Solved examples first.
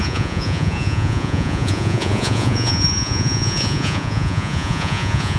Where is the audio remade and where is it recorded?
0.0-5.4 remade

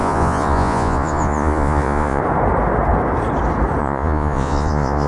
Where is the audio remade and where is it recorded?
0.0-2.2 remade; 2.2-3.8 recorded; 3.8-5.1 remade

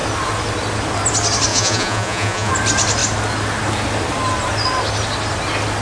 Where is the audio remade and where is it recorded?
0.0-1.5 recorded; 1.5-2.5 remade; 2.5-5.8 recorded